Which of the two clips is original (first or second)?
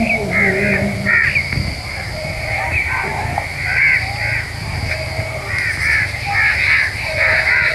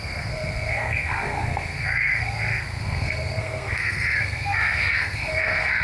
first